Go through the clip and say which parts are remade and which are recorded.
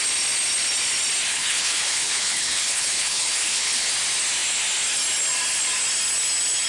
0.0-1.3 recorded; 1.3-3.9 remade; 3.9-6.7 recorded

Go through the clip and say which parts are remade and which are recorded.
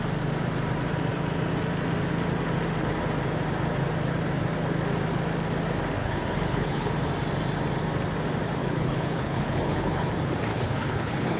0.0-6.0 recorded; 6.0-6.9 remade; 6.9-8.6 recorded; 8.6-10.1 remade; 10.1-10.5 recorded; 10.5-11.4 remade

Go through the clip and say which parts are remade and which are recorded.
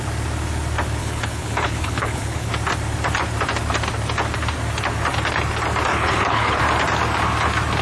0.0-1.0 recorded; 1.0-2.5 remade; 2.5-5.9 recorded; 5.9-6.6 remade; 6.6-7.8 recorded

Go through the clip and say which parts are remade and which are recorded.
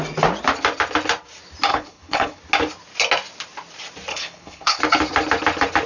0.0-1.7 recorded; 1.7-2.4 remade; 2.4-4.1 recorded; 4.1-4.8 remade; 4.8-5.9 recorded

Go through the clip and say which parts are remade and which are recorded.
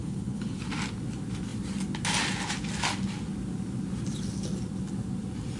0.0-0.6 remade; 0.6-5.6 recorded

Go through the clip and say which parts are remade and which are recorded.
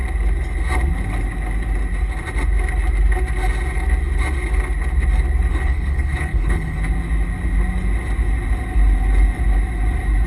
0.0-5.5 recorded; 5.5-6.8 remade; 6.8-10.3 recorded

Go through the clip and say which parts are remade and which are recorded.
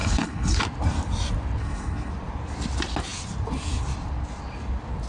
0.0-0.6 remade; 0.6-1.6 recorded; 1.6-2.1 remade; 2.1-5.1 recorded